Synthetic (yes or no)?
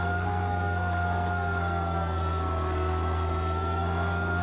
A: yes